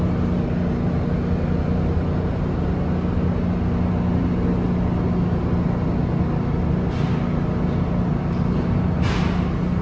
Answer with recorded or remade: recorded